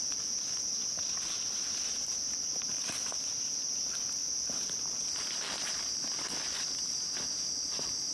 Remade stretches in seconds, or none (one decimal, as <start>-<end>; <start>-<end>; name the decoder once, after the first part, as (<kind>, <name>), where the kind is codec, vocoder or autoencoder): none